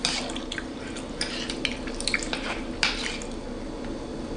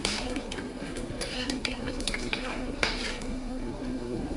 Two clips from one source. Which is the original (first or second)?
first